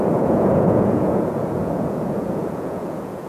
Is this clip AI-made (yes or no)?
yes